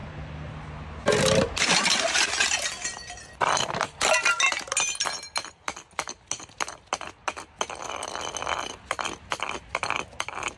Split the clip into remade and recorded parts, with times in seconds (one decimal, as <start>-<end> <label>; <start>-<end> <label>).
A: 0.0-10.6 recorded